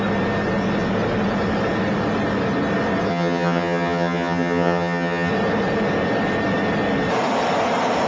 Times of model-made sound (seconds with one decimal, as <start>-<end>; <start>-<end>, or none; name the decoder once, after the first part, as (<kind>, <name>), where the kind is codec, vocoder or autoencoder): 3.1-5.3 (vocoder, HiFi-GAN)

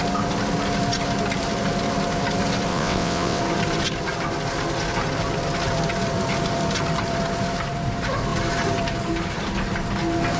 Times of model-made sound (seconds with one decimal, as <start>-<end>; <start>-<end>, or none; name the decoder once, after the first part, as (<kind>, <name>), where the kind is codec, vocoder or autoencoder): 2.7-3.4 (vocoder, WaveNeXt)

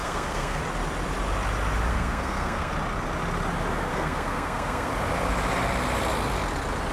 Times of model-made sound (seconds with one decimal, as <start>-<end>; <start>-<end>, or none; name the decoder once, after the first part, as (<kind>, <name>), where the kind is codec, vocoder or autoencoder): 0.0-0.6 (codec, SNAC); 1.9-2.7; 3.9-4.9